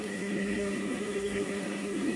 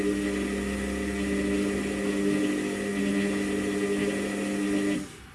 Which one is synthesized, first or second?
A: first